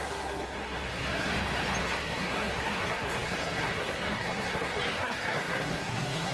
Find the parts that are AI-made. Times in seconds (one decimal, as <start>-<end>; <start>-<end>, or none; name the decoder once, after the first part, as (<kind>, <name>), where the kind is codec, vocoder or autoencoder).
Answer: 0.0-1.3 (codec, SNAC); 1.8-6.3